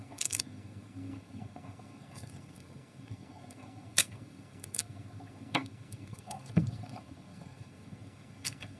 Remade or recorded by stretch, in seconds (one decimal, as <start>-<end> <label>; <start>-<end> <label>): 0.0-8.8 remade